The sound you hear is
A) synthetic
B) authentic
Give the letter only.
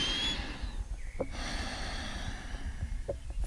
B